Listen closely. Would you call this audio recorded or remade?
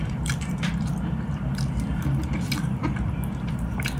remade